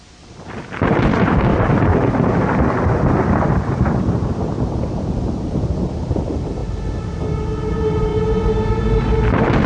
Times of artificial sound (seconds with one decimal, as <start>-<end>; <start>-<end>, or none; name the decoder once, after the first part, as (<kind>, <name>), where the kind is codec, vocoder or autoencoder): none